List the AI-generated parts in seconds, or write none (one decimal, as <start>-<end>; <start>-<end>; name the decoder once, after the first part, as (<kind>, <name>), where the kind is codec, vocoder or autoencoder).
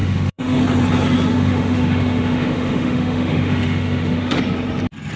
0.0-0.6 (autoencoder, DAC-VAE); 1.3-4.4